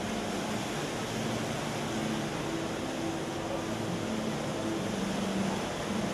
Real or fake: real